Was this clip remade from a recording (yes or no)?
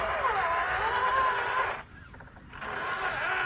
no